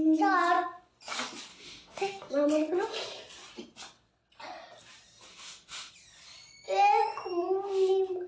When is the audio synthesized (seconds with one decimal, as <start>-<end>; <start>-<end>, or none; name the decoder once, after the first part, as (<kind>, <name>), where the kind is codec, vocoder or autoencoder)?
1.5-2.3 (autoencoder, DAC-VAE); 5.3-5.9